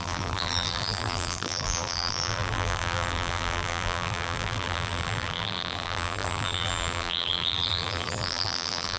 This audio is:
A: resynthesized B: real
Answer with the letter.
A